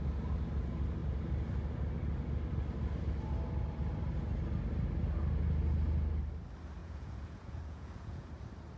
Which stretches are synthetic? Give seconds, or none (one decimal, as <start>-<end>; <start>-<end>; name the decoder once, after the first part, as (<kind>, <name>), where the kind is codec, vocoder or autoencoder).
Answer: 6.8-8.3 (vocoder, Vocos)